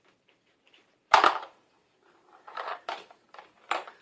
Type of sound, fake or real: fake